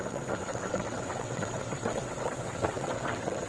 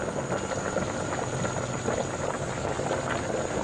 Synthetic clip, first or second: first